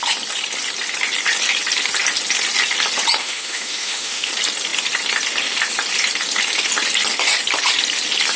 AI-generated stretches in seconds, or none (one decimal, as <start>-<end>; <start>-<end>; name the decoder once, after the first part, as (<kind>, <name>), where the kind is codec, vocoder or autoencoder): 3.2-4.3 (autoencoder, DAC-VAE)